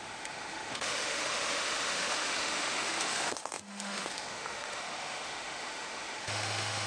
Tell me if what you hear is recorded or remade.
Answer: remade